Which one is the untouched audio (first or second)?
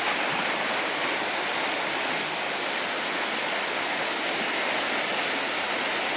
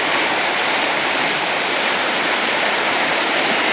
first